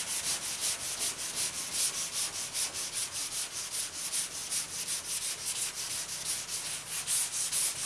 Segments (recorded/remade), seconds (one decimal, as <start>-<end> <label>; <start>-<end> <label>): 0.0-7.9 recorded